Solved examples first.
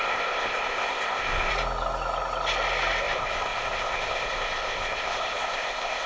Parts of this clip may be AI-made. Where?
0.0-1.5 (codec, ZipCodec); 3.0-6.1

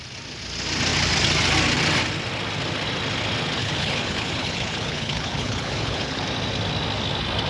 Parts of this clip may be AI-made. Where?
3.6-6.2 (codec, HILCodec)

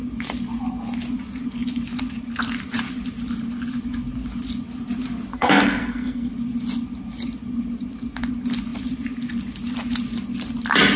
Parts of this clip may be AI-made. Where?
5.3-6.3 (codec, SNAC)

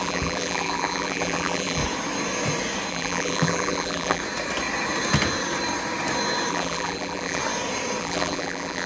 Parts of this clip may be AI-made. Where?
0.0-1.8 (vocoder, BigVGAN v2); 2.9-4.2; 6.5-7.4; 8.0-8.9

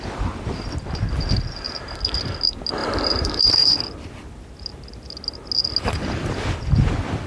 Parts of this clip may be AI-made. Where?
2.8-3.8 (vocoder, BigVGAN v2)

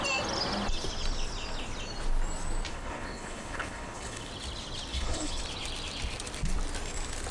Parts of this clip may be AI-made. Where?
2.7-4.3 (codec, HILCodec); 4.9-5.4

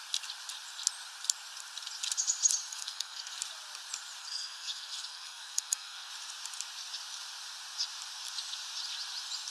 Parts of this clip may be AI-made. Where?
2.7-3.4 (codec, SNAC); 4.2-6.1

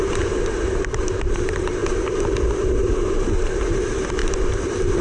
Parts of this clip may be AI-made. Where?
0.0-1.8 (vocoder, BigVGAN v2); 2.5-4.2